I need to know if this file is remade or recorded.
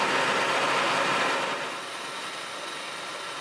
recorded